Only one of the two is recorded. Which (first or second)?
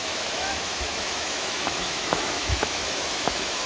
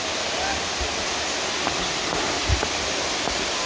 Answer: second